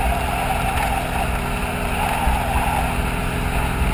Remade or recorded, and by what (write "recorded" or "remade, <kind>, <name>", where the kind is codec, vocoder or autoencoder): recorded